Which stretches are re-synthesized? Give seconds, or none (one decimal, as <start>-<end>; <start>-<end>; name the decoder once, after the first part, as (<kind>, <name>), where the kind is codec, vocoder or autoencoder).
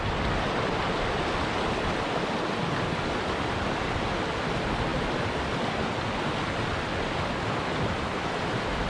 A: none